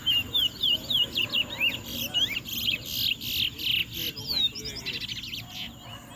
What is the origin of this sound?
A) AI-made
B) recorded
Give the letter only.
B